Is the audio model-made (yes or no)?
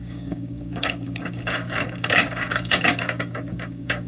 yes